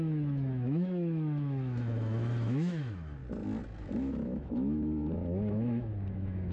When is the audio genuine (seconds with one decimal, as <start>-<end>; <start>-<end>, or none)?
3.2-3.8